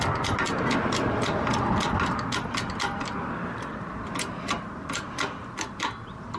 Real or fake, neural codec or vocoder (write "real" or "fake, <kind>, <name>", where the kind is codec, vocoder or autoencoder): real